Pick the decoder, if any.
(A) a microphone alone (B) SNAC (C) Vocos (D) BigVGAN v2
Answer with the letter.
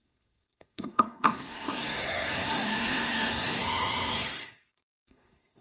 B